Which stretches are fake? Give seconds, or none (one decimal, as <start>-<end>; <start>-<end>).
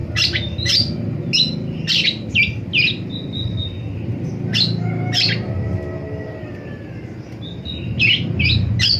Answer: none